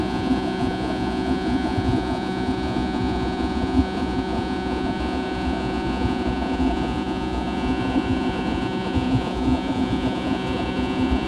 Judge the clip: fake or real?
fake